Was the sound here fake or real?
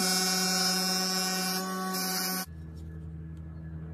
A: real